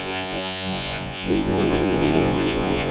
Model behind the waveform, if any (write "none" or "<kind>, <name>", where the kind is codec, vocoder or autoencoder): vocoder, Vocos